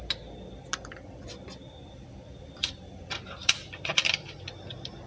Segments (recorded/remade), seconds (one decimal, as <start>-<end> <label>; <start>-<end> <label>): 0.0-1.8 recorded; 1.8-5.1 remade